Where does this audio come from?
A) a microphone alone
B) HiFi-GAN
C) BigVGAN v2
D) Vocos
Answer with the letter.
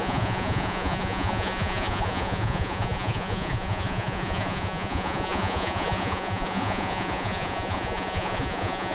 D